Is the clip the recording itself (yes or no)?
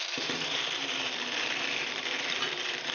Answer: no